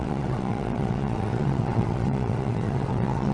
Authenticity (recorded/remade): remade